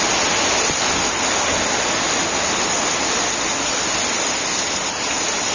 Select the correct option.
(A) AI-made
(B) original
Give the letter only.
B